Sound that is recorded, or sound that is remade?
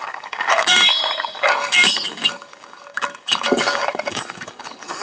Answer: remade